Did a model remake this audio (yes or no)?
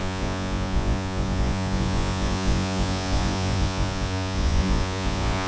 yes